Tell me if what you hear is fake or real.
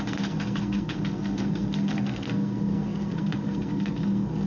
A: fake